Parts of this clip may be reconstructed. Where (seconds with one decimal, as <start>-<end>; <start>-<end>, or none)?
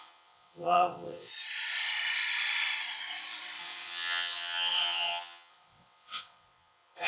0.0-1.3; 3.6-7.1